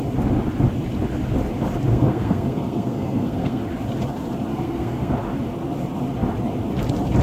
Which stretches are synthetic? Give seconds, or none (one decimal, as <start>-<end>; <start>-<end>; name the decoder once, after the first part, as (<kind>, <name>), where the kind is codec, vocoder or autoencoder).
1.9-3.6 (codec, SNAC); 4.5-5.1